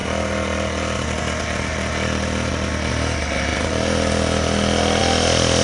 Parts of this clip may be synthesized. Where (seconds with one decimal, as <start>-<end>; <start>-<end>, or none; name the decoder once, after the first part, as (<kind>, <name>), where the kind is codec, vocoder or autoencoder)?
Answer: none